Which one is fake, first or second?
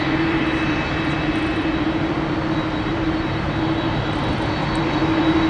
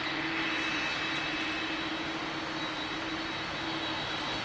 first